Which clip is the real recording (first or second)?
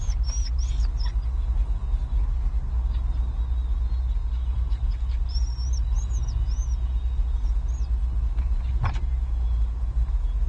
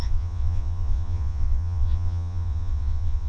first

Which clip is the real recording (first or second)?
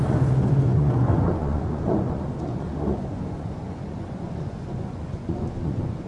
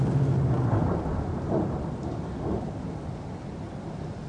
second